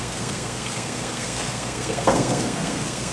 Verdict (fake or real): fake